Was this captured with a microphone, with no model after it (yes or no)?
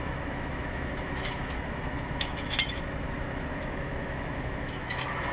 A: no